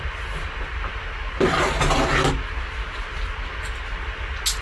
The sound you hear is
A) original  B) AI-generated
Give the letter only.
A